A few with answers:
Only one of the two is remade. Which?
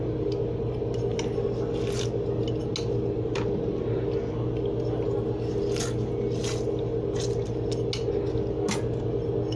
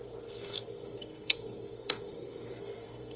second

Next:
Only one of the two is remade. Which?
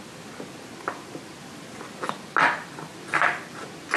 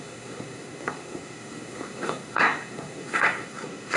second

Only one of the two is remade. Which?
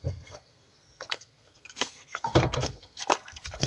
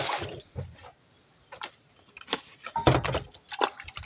first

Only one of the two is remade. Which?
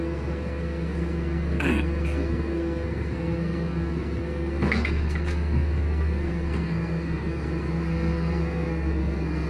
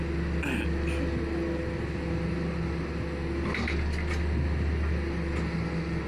first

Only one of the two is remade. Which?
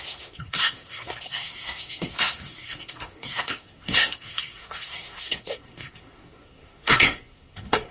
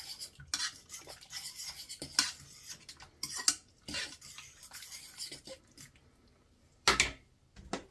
first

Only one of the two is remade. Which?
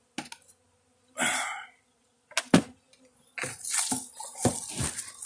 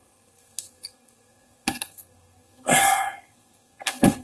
second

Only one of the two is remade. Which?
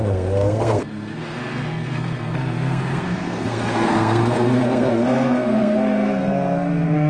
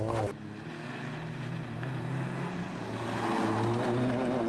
first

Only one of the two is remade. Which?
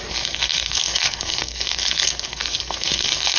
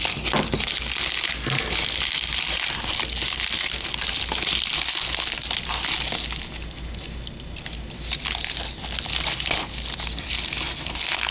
first